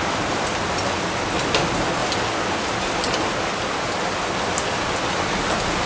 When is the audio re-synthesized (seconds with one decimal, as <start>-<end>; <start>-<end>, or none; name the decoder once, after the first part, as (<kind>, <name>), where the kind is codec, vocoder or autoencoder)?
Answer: none